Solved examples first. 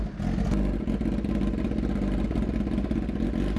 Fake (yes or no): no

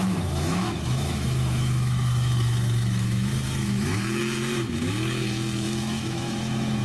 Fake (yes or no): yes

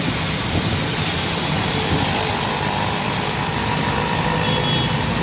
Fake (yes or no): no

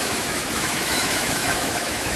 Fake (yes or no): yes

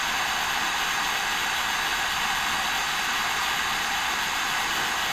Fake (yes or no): no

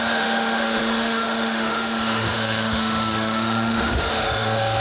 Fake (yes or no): yes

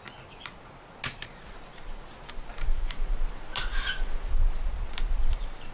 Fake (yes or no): no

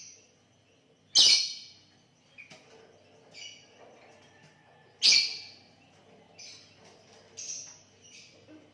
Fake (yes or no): no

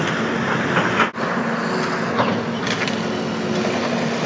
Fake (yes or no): no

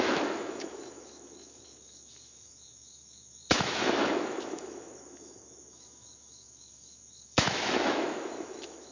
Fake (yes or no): yes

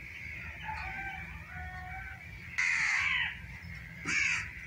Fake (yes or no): no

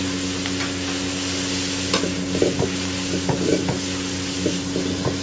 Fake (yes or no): no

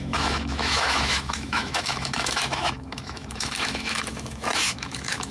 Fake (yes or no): yes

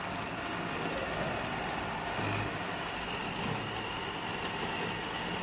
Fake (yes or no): no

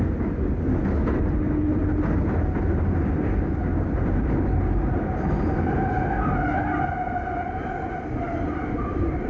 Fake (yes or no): no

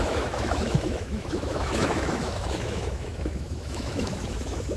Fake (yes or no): yes